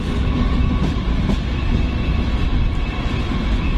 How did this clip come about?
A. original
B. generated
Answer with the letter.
A